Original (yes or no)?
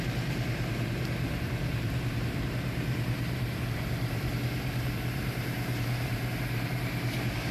no